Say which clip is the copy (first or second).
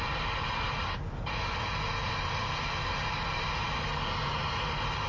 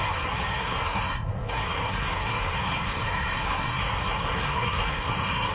second